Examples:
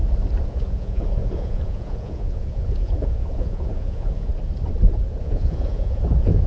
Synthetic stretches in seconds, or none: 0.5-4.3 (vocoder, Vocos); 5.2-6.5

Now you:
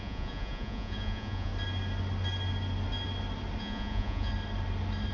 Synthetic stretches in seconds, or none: 0.0-1.5 (vocoder, Vocos); 3.6-4.3

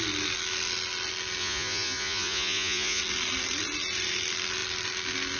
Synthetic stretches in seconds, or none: 1.4-3.0 (vocoder, Vocos)

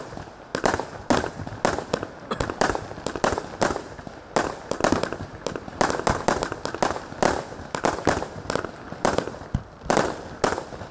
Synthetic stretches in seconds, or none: none

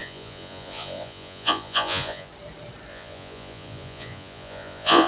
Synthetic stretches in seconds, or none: 0.0-2.3 (vocoder, Vocos); 2.9-5.1